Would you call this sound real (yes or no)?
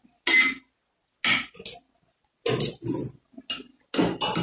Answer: yes